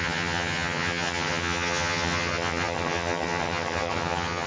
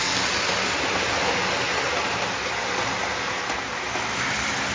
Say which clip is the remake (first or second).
first